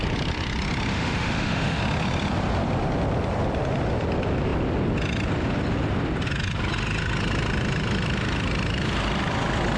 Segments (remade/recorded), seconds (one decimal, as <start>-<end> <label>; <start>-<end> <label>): 0.0-0.9 recorded; 0.9-1.8 remade; 1.8-9.8 recorded